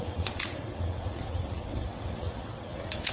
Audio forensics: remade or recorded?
remade